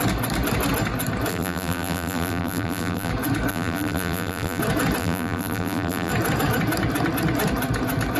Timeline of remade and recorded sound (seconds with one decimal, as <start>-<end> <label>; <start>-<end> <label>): 0.0-1.3 recorded; 1.3-3.1 remade; 3.1-3.5 recorded; 3.5-4.6 remade; 4.6-5.0 recorded; 5.0-6.1 remade; 6.1-8.2 recorded